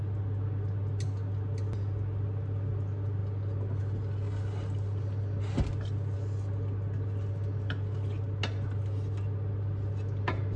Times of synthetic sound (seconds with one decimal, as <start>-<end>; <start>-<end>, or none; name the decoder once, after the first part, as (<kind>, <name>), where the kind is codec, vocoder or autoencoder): none